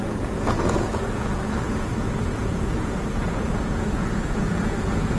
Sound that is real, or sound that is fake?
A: fake